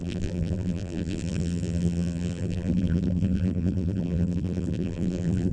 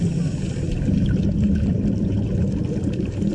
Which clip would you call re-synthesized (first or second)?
first